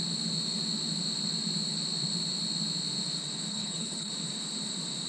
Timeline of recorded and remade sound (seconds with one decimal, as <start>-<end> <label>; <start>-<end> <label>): 0.0-3.5 recorded; 3.5-4.1 remade; 4.1-5.1 recorded

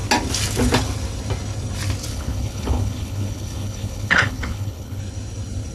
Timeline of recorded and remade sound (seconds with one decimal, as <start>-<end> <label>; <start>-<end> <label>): 0.0-2.1 recorded; 2.1-5.0 remade; 5.0-5.7 recorded

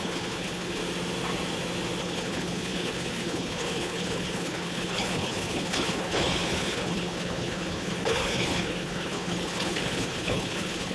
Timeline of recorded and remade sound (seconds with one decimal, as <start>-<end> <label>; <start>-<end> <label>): 0.0-0.8 remade; 0.8-2.0 recorded; 2.0-10.9 remade

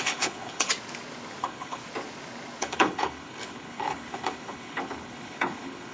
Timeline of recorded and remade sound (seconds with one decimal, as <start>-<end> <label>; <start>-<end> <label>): 0.0-0.7 remade; 0.7-1.4 recorded; 1.4-1.8 remade; 1.8-2.6 recorded; 2.6-5.9 remade

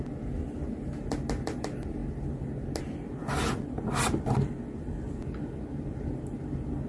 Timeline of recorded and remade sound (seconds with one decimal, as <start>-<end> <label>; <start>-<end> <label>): 0.0-6.9 recorded

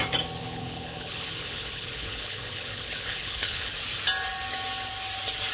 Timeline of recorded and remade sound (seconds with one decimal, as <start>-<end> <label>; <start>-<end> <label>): 0.0-0.4 recorded; 0.4-3.7 remade; 3.7-5.5 recorded

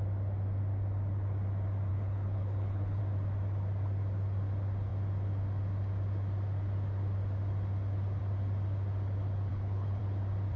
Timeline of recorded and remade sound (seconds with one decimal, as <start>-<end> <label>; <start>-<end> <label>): 0.0-1.9 recorded; 1.9-3.0 remade; 3.0-9.5 recorded; 9.5-10.0 remade; 10.0-10.6 recorded

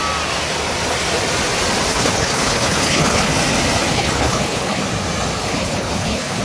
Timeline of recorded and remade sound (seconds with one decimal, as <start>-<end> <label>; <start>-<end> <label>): 0.0-1.9 recorded; 1.9-3.3 remade; 3.3-3.9 recorded; 3.9-4.8 remade; 4.8-5.4 recorded; 5.4-6.4 remade